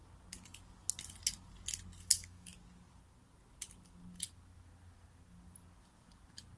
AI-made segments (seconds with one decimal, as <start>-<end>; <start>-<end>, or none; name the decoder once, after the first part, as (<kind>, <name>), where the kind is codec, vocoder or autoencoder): 2.0-2.5 (autoencoder, DAC-VAE)